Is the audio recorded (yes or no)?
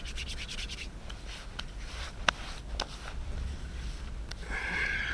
yes